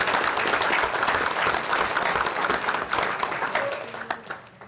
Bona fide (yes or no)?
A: yes